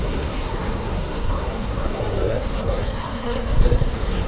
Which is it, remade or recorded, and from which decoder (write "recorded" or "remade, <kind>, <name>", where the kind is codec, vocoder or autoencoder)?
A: remade, codec, SNAC